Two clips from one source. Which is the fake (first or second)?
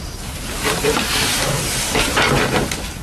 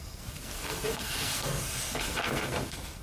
second